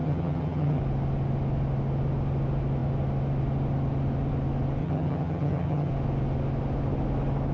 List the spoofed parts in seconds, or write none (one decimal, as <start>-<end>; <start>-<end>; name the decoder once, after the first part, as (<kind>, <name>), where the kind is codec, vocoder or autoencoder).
0.0-0.8 (vocoder, HiFi-GAN); 4.8-5.9